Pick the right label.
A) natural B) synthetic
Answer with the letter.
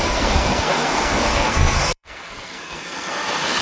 B